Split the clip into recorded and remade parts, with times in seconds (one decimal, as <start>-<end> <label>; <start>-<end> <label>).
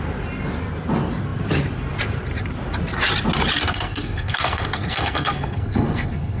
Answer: 0.0-3.6 recorded; 3.6-6.4 remade